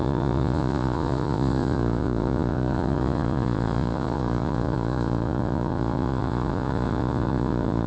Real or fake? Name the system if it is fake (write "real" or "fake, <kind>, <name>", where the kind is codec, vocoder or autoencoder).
fake, vocoder, Vocos